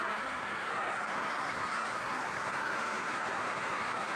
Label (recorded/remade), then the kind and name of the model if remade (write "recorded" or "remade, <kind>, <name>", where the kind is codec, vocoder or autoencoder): remade, codec, SNAC